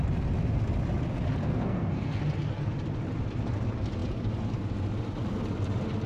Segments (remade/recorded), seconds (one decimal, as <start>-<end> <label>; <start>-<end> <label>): 0.0-1.4 recorded; 1.4-2.2 remade; 2.2-6.1 recorded